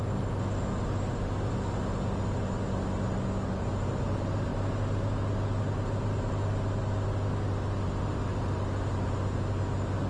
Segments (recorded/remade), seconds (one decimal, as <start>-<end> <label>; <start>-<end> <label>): 0.0-10.1 recorded